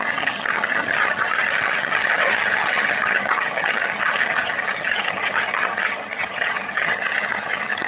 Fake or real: fake